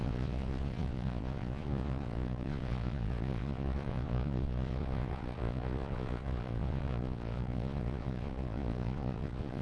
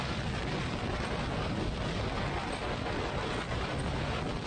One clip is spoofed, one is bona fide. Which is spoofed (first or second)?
first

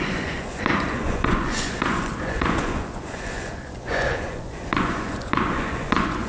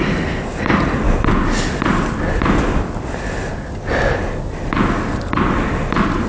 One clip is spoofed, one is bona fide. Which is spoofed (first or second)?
first